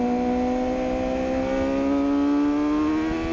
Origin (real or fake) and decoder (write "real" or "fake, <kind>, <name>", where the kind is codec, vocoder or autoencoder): real